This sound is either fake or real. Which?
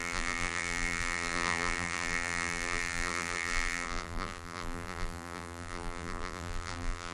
fake